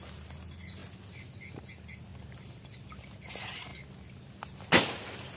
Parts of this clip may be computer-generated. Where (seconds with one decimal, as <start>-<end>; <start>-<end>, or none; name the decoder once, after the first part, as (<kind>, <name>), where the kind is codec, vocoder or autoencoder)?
none